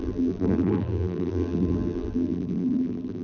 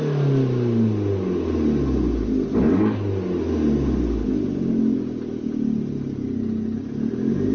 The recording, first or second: second